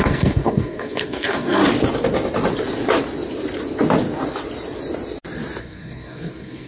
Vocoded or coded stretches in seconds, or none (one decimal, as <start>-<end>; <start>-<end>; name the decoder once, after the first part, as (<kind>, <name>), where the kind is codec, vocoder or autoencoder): 0.0-1.6 (codec, SNAC); 5.6-6.7

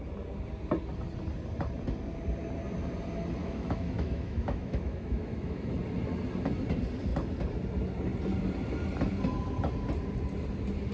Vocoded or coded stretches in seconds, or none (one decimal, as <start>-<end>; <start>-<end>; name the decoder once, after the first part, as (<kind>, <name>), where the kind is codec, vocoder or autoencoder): 3.4-5.7 (autoencoder, DAC-VAE)